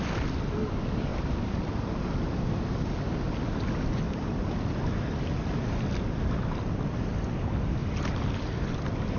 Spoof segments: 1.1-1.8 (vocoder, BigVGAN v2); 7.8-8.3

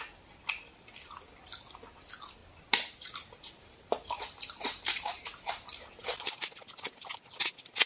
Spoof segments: 2.4-6.2 (vocoder, BigVGAN v2)

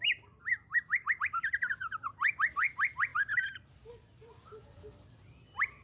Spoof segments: 0.0-5.8 (vocoder, BigVGAN v2)

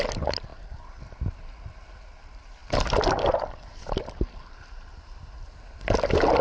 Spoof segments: 0.5-1.0 (vocoder, BigVGAN v2); 2.6-5.2